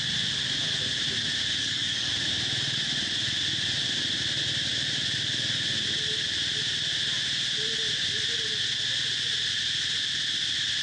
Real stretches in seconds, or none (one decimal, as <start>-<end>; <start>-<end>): 0.0-1.6; 2.1-10.8